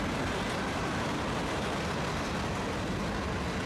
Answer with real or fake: real